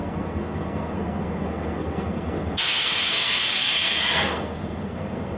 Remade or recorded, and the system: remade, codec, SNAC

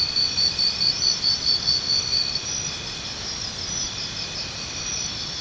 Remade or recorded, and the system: recorded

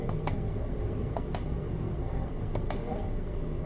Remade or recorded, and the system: remade, codec, SNAC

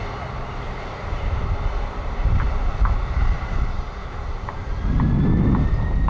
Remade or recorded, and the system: recorded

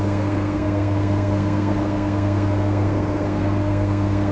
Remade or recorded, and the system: remade, codec, SNAC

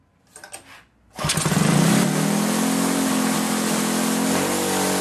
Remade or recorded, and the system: recorded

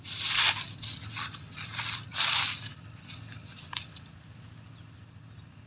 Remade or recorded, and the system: recorded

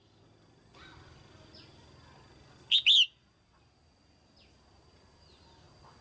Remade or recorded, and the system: recorded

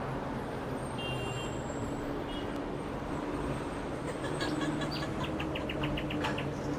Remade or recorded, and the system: recorded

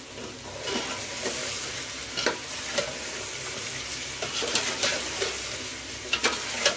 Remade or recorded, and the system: recorded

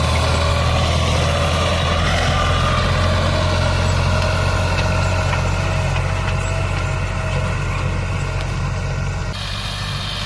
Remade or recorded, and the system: recorded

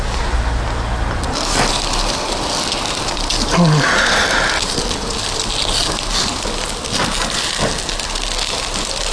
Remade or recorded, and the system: recorded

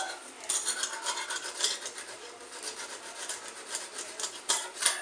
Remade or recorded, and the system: recorded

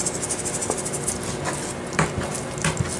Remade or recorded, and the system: recorded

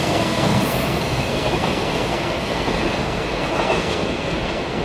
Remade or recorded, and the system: remade, codec, SNAC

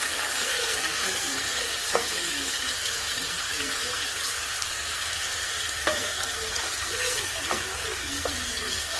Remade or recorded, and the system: remade, codec, SNAC